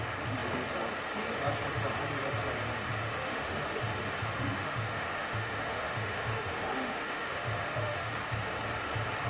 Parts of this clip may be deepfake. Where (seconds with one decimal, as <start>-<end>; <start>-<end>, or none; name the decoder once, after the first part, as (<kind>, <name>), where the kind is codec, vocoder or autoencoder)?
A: 3.0-3.8 (autoencoder, DAC-VAE); 4.2-8.1